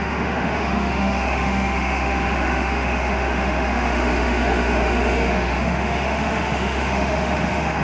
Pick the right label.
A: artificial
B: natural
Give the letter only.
A